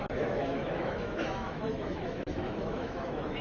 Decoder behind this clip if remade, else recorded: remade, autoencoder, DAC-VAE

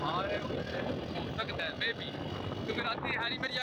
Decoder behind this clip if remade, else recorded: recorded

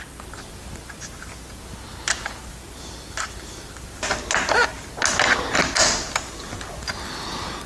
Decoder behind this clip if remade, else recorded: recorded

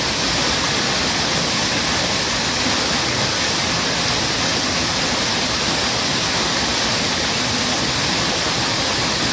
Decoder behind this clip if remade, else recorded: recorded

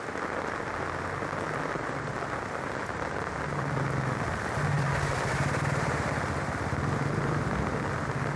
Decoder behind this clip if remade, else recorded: recorded